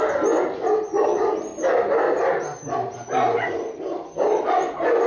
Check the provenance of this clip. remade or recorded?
recorded